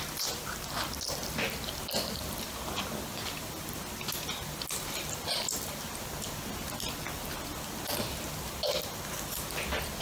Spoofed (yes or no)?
no